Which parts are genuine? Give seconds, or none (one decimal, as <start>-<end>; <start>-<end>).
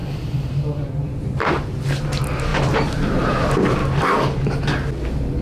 1.9-2.5; 4.6-5.4